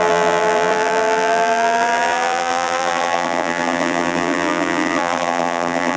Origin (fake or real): fake